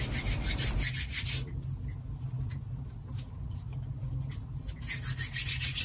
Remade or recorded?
recorded